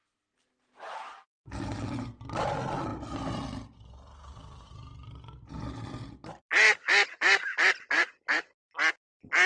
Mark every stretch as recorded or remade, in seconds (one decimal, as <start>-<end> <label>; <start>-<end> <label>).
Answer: 0.0-9.5 recorded